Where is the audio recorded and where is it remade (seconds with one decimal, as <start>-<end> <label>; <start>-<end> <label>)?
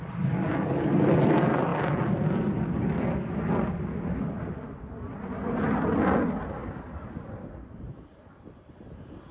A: 0.0-1.7 recorded; 1.7-2.8 remade; 2.8-6.6 recorded; 6.6-8.7 remade; 8.7-9.3 recorded